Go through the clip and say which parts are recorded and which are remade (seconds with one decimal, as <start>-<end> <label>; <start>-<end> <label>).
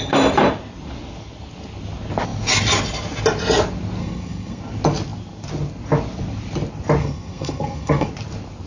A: 0.0-4.0 recorded; 4.0-4.6 remade; 4.6-7.0 recorded; 7.0-8.1 remade; 8.1-8.7 recorded